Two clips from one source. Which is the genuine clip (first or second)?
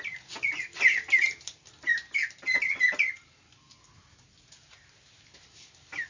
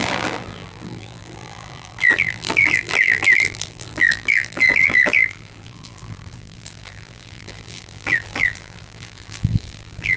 first